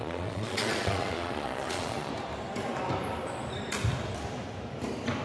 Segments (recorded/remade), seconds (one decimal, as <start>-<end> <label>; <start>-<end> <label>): 0.0-2.1 remade; 2.1-5.2 recorded